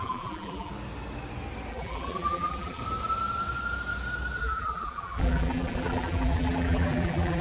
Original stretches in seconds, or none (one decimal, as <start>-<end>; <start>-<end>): 0.7-1.7; 2.8-4.4